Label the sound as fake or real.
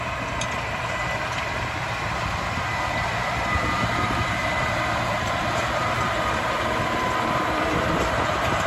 fake